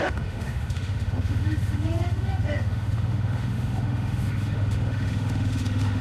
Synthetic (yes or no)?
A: yes